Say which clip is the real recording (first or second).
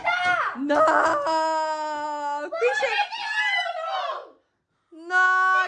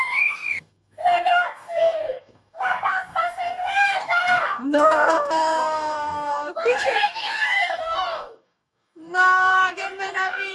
first